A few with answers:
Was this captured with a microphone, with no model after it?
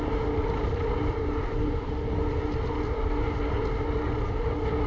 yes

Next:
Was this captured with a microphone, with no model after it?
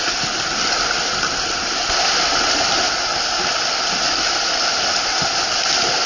yes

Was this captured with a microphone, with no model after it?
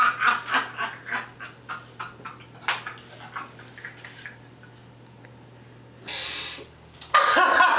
yes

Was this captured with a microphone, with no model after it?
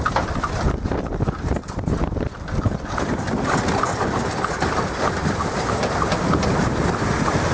no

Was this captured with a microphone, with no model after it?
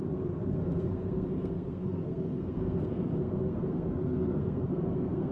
no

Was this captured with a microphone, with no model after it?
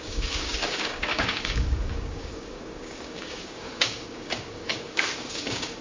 no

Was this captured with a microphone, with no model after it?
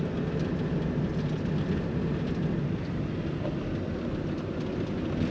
yes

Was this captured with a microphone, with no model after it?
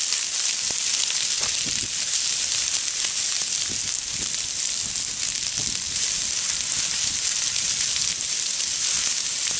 yes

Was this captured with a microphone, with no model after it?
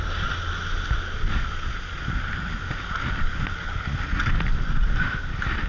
yes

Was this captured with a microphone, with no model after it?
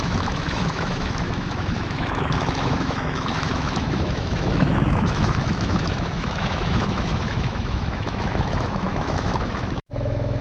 no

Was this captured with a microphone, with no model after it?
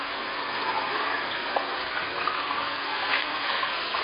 no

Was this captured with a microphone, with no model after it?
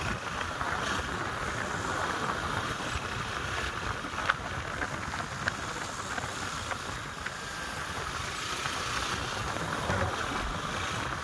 yes